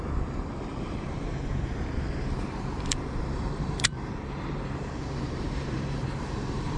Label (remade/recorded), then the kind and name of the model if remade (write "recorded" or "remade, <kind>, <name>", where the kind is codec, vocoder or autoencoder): remade, vocoder, BigVGAN v2